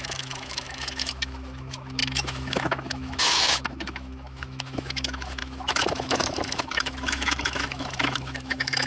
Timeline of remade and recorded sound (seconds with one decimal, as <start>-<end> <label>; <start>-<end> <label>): 0.0-8.9 remade